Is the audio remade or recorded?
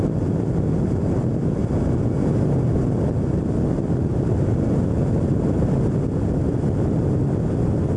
recorded